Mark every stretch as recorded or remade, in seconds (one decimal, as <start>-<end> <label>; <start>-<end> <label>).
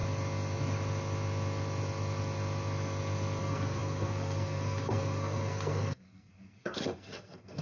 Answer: 0.0-3.4 recorded; 3.4-7.6 remade